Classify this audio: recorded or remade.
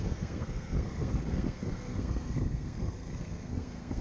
remade